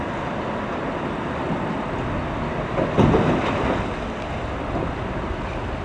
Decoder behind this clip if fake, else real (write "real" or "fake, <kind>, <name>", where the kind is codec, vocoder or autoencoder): real